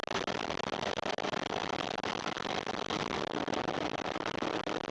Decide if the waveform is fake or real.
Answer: real